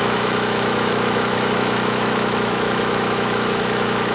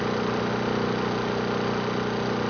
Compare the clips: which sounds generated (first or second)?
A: first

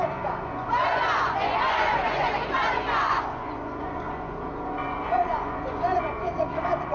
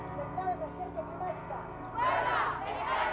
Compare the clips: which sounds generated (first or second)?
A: first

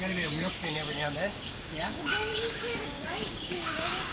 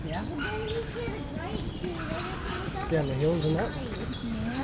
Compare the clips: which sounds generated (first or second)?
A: first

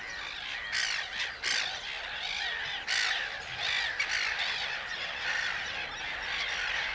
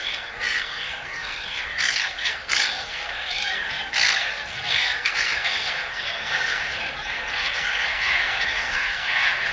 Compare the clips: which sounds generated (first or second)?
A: second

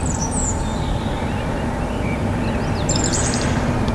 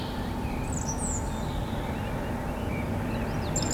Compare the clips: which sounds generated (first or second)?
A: first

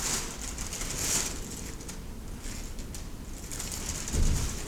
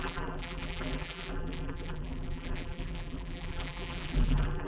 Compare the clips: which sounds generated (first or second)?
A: second